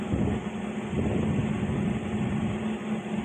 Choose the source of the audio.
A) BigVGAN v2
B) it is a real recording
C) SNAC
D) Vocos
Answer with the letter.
B